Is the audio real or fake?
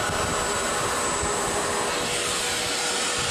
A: real